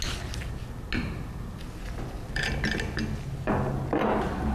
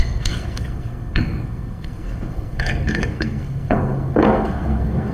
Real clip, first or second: first